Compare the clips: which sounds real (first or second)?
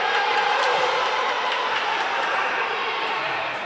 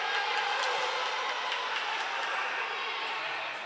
second